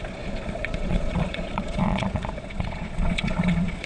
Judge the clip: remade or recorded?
remade